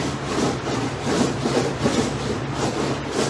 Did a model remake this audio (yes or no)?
no